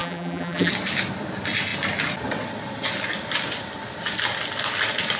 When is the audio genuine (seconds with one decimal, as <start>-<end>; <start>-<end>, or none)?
0.7-5.2